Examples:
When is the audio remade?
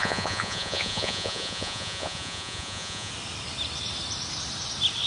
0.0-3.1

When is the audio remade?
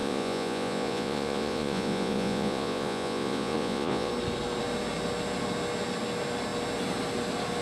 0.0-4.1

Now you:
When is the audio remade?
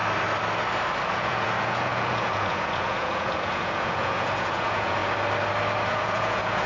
1.1-5.0; 5.9-6.7